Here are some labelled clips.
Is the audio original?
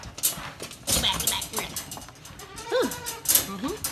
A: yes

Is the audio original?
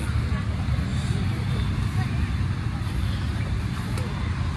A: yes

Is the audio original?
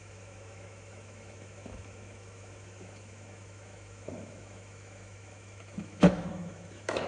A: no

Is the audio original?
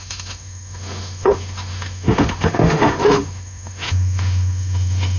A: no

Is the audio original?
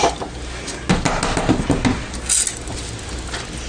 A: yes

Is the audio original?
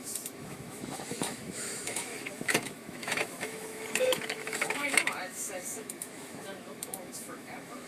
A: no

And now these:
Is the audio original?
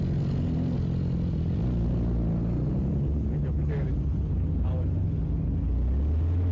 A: yes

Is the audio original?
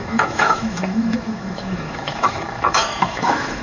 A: no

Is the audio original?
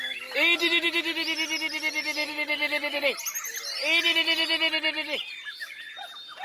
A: yes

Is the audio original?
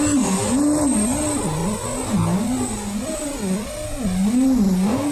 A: yes